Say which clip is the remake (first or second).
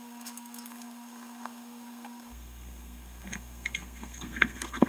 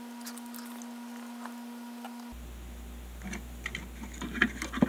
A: first